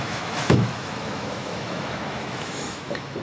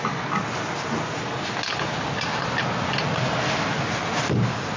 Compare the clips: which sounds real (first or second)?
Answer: second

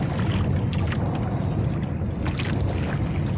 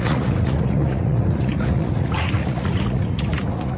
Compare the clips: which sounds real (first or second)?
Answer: first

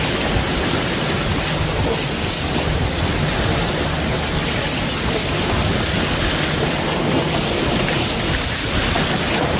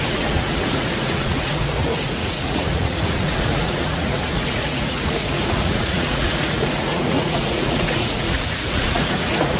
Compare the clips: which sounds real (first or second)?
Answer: first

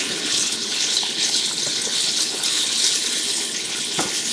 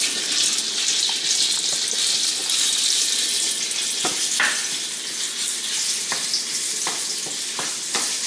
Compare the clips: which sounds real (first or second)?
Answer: second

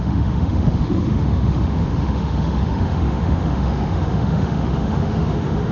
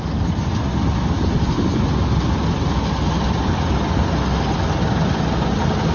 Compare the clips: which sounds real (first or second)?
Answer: second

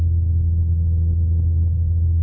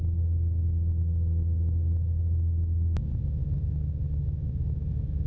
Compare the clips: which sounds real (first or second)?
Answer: first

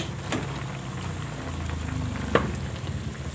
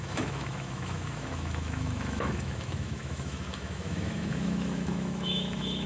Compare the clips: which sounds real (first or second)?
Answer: first